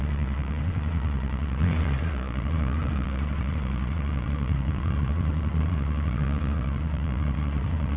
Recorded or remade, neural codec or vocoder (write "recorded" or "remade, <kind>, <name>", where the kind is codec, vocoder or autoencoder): remade, vocoder, Vocos